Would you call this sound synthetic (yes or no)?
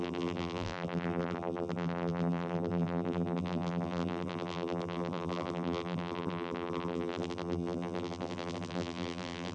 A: yes